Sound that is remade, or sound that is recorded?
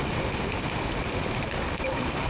recorded